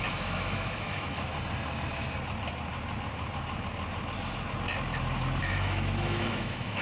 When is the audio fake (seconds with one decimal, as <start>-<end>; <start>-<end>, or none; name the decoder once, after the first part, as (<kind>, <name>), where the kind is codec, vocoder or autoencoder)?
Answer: 0.0-1.3 (autoencoder, DAC-VAE); 5.4-6.8